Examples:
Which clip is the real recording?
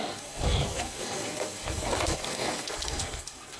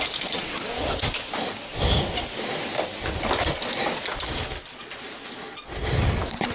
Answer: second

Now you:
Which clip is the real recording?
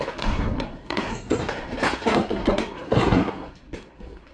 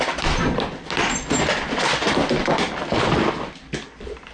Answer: second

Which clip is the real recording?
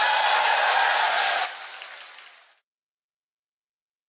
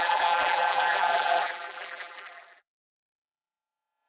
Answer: first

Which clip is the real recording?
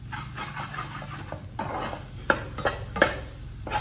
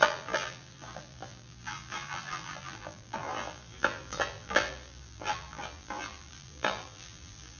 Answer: first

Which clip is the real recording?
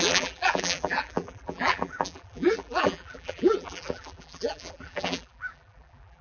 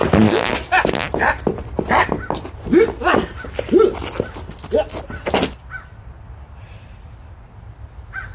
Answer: second